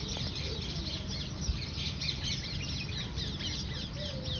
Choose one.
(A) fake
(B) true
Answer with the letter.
B